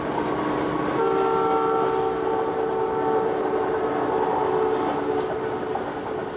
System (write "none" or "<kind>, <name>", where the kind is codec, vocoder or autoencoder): none